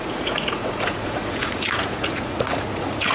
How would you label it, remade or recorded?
remade